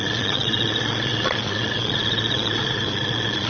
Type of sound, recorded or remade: remade